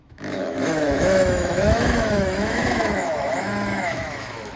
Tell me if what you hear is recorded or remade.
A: remade